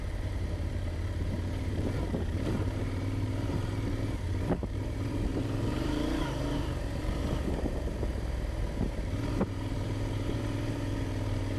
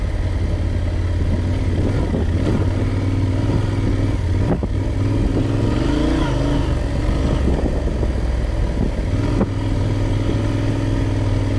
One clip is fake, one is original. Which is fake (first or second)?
first